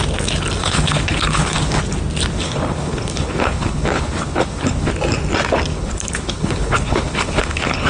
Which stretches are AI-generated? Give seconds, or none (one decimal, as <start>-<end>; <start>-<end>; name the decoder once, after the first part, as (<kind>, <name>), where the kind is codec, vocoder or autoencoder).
0.6-1.8 (codec, HILCodec); 2.3-4.9; 5.7-7.9